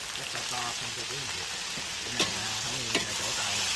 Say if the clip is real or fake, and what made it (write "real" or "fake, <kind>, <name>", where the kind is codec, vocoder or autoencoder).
real